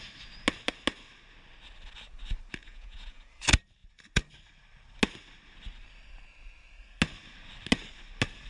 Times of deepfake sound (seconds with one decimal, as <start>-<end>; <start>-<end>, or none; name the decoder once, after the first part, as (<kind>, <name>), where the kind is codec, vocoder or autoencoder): 2.6-3.3 (vocoder, Vocos)